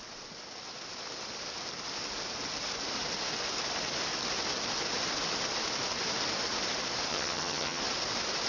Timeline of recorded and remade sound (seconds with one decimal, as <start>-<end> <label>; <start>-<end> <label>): 0.0-7.1 recorded; 7.1-7.8 remade; 7.8-8.5 recorded